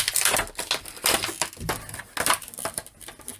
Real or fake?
real